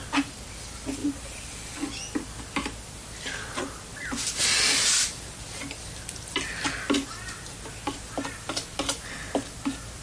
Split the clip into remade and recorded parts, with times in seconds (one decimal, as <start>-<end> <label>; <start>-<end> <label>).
0.0-10.0 recorded